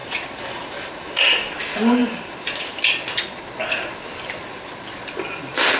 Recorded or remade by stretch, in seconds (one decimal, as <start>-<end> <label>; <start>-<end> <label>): 0.0-1.5 remade; 1.5-2.0 recorded; 2.0-2.9 remade; 2.9-5.8 recorded